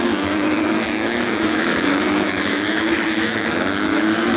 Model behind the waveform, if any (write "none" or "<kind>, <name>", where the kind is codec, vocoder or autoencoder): autoencoder, DAC-VAE